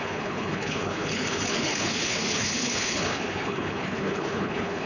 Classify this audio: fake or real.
fake